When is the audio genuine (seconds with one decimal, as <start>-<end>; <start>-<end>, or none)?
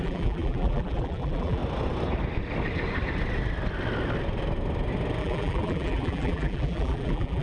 1.6-5.2